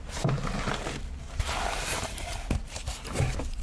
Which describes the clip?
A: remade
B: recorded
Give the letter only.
A